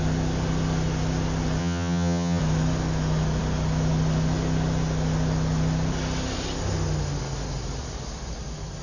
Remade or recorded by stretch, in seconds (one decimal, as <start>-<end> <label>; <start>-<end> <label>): 0.0-1.6 recorded; 1.6-2.4 remade; 2.4-8.8 recorded